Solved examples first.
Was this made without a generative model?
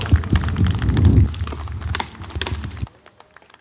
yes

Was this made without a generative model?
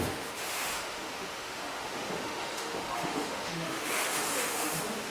no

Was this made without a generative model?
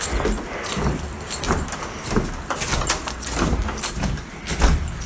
yes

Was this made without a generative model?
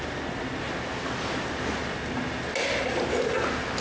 yes